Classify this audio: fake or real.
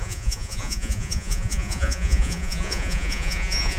fake